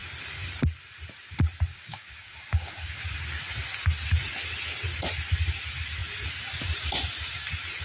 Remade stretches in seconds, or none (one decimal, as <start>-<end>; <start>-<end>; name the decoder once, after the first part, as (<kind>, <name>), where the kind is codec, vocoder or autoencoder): 1.7-3.1 (codec, DAC)